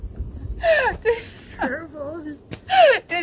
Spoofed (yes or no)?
no